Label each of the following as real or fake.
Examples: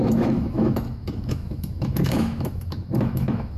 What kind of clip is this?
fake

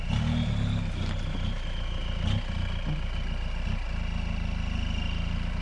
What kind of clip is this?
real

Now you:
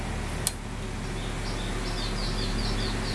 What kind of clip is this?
real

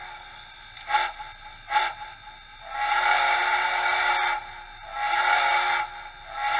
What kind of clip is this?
real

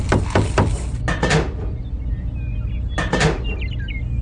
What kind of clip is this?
real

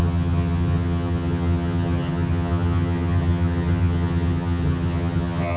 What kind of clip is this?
fake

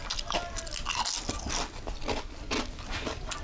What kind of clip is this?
real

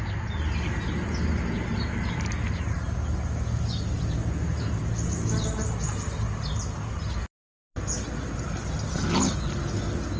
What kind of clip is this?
real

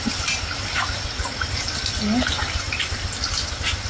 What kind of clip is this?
real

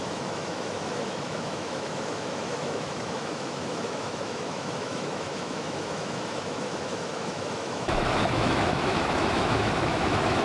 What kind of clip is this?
fake